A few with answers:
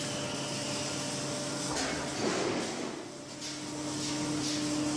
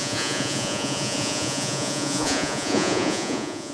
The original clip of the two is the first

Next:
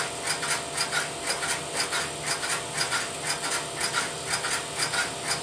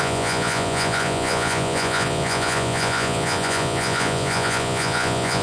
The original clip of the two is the first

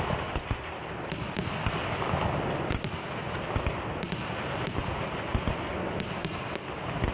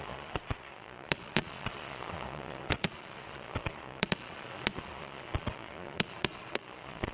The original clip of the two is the first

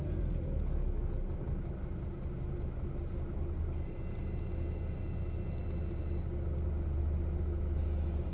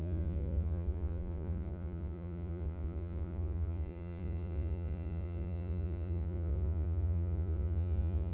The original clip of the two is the first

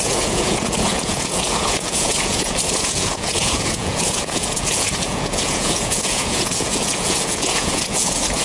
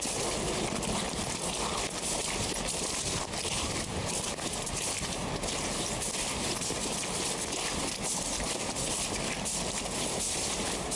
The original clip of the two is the second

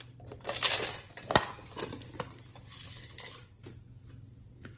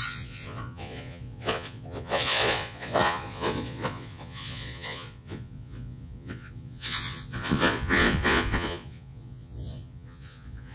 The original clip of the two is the first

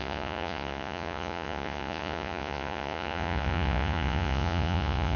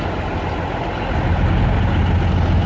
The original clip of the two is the second